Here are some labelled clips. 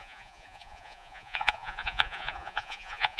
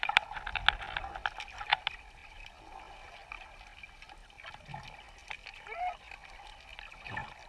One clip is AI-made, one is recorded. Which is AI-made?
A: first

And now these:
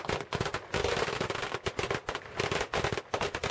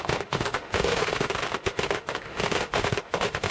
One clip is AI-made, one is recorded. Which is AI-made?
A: second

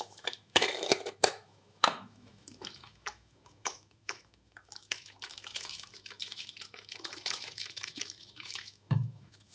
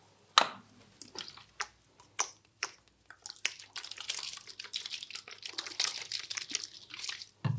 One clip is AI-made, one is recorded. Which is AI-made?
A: first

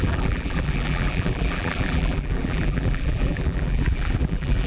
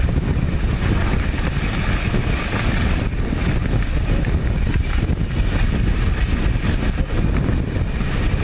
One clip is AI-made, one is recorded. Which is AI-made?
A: first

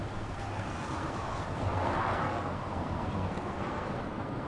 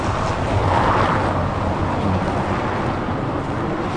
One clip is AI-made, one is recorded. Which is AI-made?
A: first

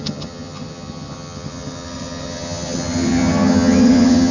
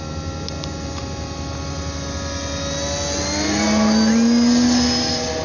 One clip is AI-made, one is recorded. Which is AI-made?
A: first